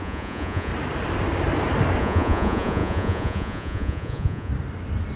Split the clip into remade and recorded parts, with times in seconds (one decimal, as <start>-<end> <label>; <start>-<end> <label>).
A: 0.0-0.7 remade; 0.7-2.0 recorded; 2.0-4.5 remade; 4.5-5.2 recorded